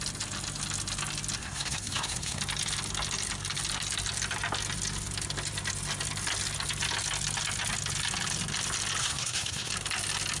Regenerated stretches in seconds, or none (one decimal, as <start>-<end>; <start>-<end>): 1.4-2.4; 9.0-9.7